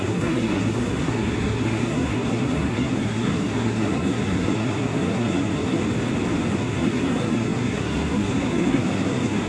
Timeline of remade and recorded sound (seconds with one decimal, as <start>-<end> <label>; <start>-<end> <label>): 0.0-5.8 remade; 5.8-6.5 recorded; 6.5-9.5 remade